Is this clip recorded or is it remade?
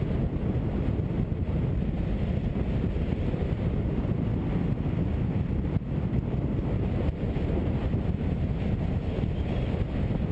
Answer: recorded